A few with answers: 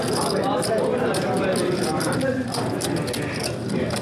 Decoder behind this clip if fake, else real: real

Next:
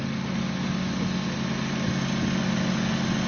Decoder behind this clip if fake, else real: real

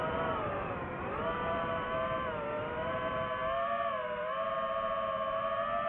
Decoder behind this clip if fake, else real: fake, vocoder, BigVGAN v2